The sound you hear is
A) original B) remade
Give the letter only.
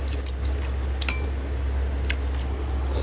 A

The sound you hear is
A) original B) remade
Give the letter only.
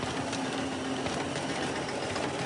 A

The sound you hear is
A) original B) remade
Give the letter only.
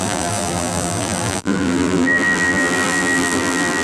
B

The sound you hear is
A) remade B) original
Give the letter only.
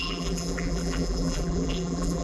A